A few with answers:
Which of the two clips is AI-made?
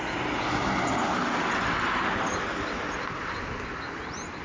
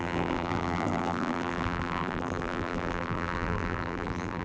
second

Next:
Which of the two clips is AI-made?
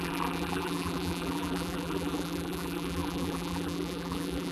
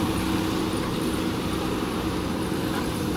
first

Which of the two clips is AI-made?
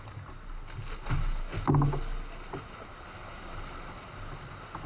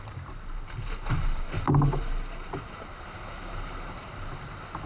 second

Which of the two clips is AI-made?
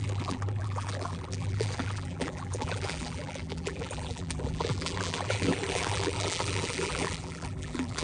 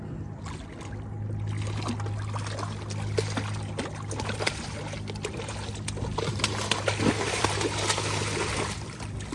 first